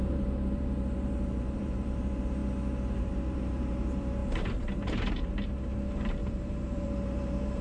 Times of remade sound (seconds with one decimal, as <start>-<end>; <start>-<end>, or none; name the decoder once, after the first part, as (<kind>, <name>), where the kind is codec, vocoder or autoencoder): 0.0-2.4 (vocoder, BigVGAN v2); 3.0-7.6